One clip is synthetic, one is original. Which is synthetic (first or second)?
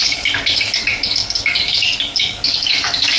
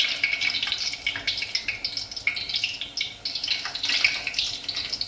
first